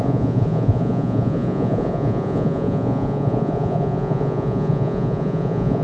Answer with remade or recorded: remade